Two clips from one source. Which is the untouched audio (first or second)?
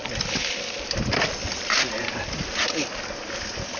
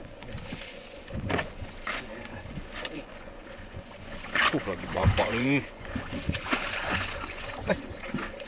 first